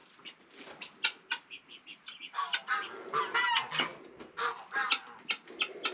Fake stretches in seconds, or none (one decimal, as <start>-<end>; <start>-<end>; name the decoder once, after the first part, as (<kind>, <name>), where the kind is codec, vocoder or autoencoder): 3.9-4.6 (vocoder, BigVGAN v2)